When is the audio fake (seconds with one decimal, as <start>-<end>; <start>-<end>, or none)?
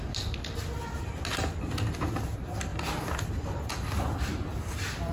none